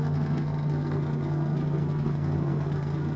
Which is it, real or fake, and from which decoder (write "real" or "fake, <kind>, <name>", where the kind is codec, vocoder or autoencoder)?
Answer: fake, codec, SNAC